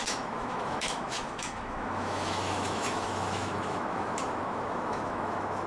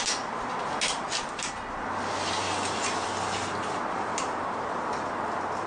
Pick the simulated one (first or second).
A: first